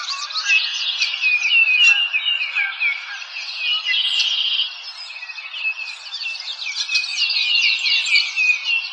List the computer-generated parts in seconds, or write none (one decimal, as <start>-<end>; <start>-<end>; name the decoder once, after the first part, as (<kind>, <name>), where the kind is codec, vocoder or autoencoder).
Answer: 7.1-7.9 (vocoder, Vocos)